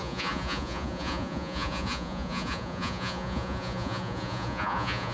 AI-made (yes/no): yes